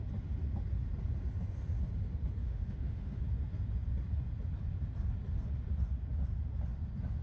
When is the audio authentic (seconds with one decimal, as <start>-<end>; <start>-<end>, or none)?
0.0-2.4; 3.2-7.2